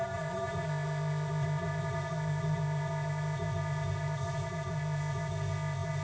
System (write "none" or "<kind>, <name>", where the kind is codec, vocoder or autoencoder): codec, ZipCodec